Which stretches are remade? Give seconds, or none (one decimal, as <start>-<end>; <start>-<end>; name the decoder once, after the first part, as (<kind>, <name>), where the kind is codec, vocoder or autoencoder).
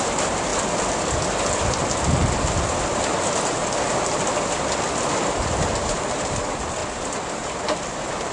0.0-0.5 (vocoder, BigVGAN v2); 5.3-8.3